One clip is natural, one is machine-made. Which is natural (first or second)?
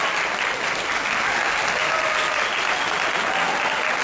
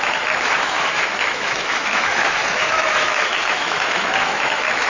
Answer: first